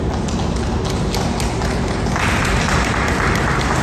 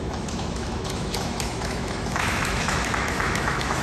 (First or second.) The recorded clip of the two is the first